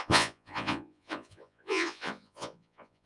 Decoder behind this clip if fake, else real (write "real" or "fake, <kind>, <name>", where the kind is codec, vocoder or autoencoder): fake, vocoder, Vocos